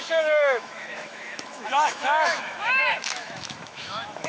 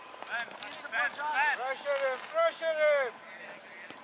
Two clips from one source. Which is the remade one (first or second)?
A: first